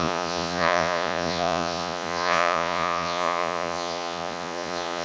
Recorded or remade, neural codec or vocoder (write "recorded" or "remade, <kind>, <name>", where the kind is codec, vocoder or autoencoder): remade, vocoder, Vocos